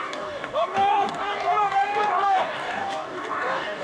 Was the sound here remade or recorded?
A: remade